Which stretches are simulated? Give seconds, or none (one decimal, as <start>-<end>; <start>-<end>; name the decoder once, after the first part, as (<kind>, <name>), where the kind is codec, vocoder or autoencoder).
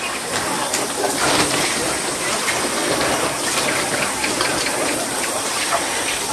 4.5-6.3 (vocoder, BigVGAN v2)